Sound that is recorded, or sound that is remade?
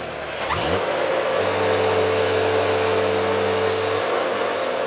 recorded